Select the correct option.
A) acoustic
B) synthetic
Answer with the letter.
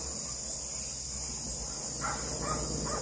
A